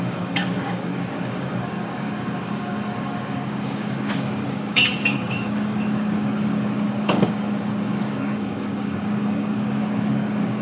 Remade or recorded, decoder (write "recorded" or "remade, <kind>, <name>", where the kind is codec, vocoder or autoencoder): remade, codec, DAC